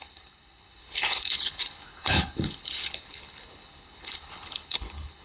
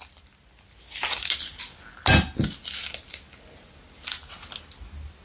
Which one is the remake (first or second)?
first